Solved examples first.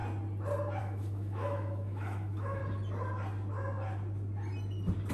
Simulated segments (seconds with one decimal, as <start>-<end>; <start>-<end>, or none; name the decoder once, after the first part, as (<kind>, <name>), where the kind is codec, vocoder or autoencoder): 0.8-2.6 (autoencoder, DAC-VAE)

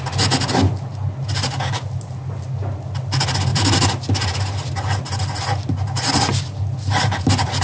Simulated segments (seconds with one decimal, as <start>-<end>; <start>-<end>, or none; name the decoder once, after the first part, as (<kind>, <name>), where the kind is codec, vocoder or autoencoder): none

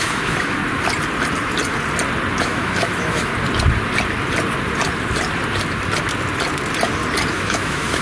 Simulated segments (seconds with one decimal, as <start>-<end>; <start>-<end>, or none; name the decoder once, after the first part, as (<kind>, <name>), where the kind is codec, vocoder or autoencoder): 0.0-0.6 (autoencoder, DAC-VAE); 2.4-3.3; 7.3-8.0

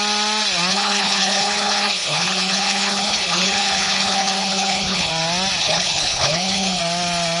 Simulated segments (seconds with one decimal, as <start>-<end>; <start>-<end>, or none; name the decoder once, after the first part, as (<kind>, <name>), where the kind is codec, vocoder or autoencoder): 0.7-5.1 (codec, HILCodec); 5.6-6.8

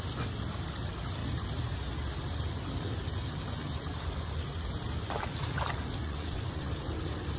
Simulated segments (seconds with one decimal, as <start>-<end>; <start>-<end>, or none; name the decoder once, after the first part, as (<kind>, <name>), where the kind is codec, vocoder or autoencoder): 6.0-6.7 (vocoder, Vocos)

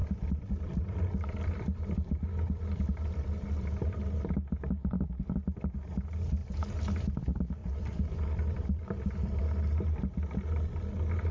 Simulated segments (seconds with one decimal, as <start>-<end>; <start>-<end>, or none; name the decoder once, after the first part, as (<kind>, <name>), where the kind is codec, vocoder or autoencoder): 0.0-3.9 (vocoder, BigVGAN v2); 7.6-9.4

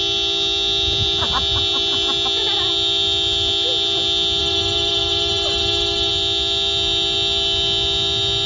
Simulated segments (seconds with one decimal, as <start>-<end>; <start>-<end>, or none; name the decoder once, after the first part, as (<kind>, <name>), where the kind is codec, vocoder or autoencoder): 4.4-6.1 (vocoder, BigVGAN v2)